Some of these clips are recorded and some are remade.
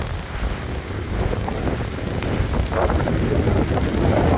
recorded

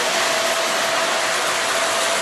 recorded